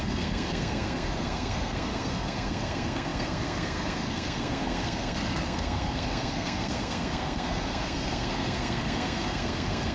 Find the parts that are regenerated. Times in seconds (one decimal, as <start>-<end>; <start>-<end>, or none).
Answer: 0.0-9.9